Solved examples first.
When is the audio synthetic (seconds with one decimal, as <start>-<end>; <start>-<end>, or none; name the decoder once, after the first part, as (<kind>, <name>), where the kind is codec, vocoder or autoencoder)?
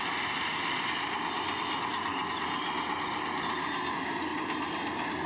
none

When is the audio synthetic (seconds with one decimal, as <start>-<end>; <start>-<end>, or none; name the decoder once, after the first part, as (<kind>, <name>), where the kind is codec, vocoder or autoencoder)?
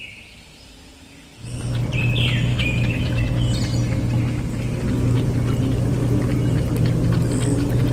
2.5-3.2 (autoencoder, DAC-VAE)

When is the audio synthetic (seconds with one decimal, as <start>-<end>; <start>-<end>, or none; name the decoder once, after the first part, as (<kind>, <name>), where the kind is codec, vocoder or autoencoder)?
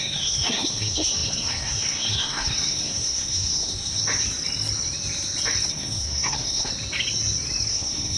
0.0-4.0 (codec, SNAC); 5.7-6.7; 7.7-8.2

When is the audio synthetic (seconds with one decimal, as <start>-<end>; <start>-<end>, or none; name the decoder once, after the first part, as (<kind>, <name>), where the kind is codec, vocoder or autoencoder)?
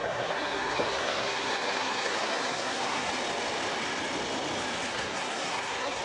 0.0-3.1 (codec, SNAC); 4.9-6.0